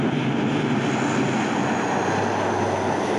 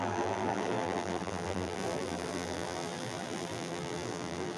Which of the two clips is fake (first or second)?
second